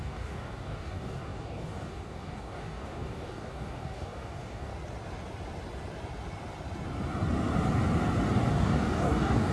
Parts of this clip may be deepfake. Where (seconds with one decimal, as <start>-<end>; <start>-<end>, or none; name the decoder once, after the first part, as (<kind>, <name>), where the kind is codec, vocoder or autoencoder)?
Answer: 0.0-4.7 (codec, DAC); 8.5-9.5